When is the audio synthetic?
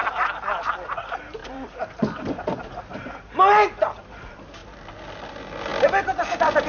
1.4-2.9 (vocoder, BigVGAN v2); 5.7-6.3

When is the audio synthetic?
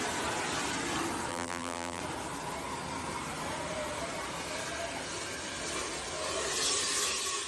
1.3-2.0 (vocoder, BigVGAN v2)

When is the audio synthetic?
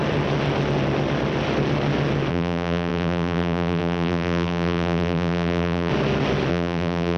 2.3-5.9 (vocoder, BigVGAN v2); 6.5-7.2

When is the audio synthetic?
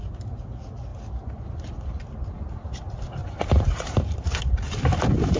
3.2-4.3 (vocoder, BigVGAN v2)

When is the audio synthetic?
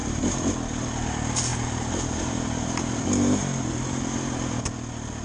0.0-0.5 (vocoder, BigVGAN v2); 1.5-4.6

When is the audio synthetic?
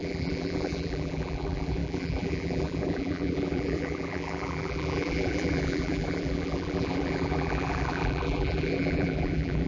0.0-9.7 (vocoder, BigVGAN v2)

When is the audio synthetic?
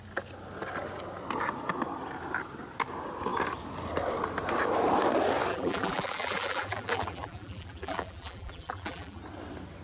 5.5-9.2 (vocoder, BigVGAN v2)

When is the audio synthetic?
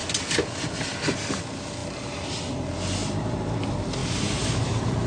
3.0-3.6 (vocoder, BigVGAN v2); 4.0-5.1